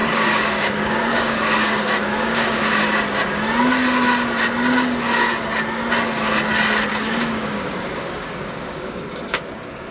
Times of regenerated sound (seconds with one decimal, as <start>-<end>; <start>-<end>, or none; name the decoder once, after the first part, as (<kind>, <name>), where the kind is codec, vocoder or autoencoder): 0.0-2.8 (codec, DAC); 6.9-9.9